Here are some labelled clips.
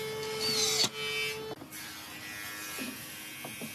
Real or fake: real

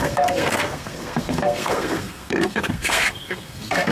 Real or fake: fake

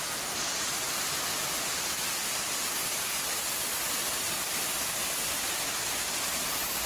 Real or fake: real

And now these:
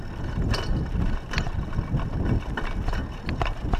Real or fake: real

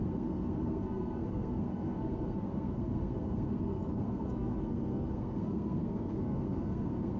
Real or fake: fake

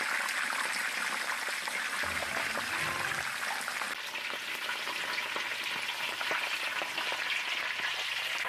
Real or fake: real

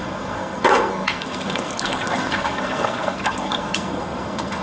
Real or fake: fake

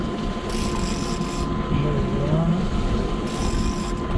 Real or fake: real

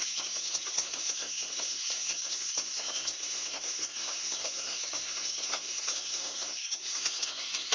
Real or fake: fake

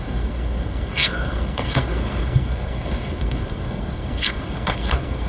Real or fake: fake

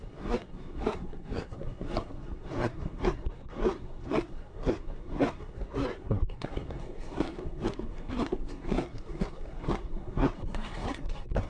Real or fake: fake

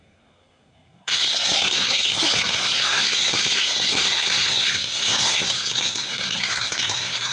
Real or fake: fake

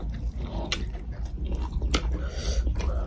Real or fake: real